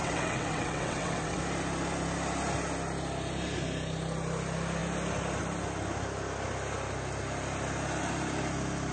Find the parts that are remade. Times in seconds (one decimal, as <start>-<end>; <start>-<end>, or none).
0.0-1.4